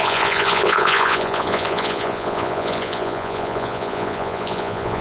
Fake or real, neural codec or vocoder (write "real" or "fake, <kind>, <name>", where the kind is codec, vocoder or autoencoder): fake, vocoder, Vocos